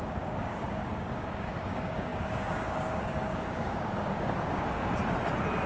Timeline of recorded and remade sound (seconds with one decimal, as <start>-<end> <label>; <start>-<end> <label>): 0.0-5.0 remade; 5.0-5.7 recorded